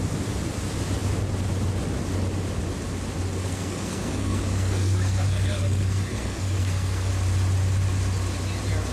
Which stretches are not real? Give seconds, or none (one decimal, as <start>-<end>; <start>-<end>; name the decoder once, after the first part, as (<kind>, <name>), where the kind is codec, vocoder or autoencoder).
3.4-7.1 (codec, SNAC)